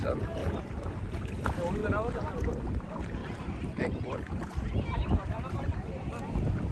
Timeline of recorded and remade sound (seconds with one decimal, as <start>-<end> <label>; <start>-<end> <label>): 0.0-0.4 recorded; 0.4-1.0 remade; 1.0-3.2 recorded; 3.2-6.2 remade; 6.2-6.7 recorded